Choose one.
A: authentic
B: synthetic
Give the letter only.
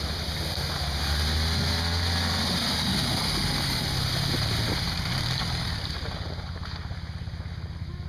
A